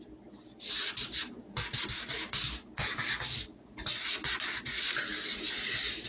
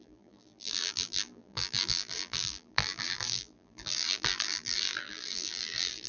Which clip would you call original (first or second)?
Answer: first